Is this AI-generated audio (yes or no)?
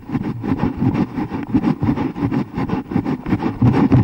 no